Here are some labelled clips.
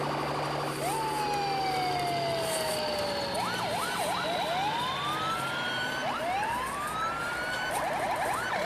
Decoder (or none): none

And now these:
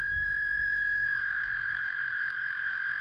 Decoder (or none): autoencoder, DAC-VAE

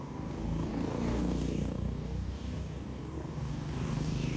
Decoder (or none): codec, DAC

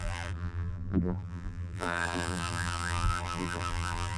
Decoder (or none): vocoder, BigVGAN v2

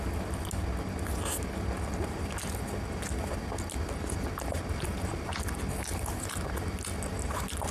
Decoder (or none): none